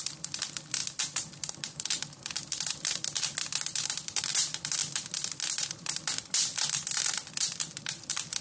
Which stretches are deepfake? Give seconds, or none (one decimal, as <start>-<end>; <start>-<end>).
0.0-8.4